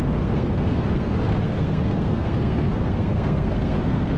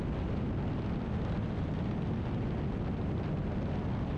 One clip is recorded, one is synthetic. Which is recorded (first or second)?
second